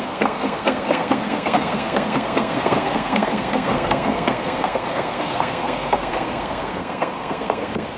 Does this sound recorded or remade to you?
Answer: remade